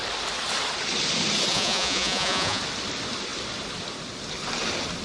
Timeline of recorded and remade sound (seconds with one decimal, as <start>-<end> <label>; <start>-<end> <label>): 0.0-1.5 recorded; 1.5-2.6 remade; 2.6-5.0 recorded